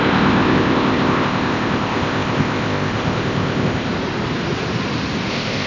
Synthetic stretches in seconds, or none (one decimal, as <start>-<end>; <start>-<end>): 0.0-3.9; 5.3-5.7